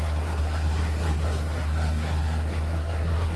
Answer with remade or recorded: remade